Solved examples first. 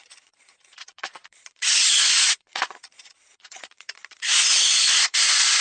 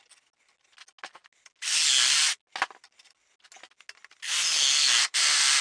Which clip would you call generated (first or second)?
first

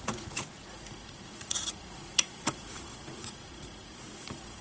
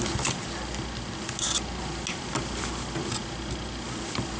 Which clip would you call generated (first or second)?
first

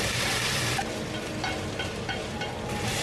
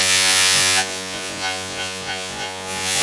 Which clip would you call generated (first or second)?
second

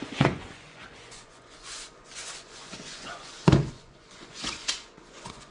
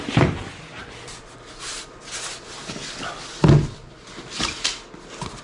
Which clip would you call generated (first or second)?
first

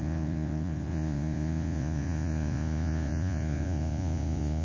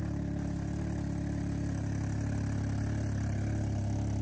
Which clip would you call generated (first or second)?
first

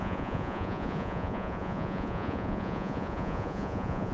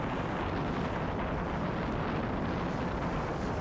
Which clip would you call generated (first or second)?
first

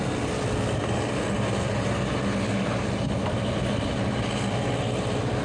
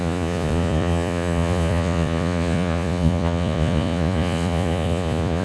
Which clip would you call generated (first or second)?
second